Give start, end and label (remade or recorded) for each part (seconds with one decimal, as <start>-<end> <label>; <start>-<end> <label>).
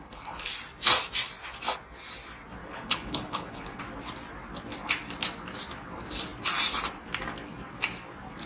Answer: 0.0-0.5 remade; 0.5-2.6 recorded; 2.6-3.8 remade; 3.8-8.5 recorded